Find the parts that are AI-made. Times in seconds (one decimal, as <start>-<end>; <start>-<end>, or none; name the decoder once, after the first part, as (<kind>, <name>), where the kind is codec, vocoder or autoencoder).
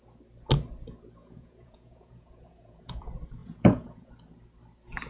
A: 1.2-3.0 (vocoder, Vocos); 3.4-4.1